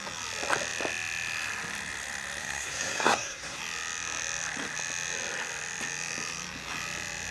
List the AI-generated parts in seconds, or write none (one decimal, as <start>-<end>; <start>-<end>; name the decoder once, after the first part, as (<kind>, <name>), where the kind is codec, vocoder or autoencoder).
2.4-3.6 (codec, SNAC)